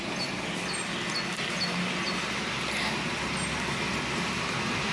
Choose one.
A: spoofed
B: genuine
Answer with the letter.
B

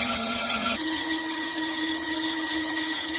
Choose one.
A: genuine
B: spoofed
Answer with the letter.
B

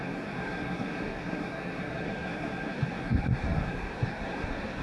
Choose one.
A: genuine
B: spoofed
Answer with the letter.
B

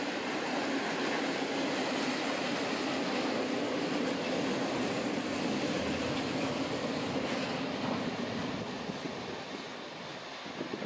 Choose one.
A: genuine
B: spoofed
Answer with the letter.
A